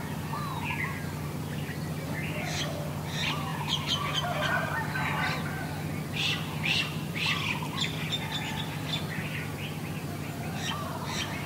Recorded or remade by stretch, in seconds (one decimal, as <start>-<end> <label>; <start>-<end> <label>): 0.0-11.5 recorded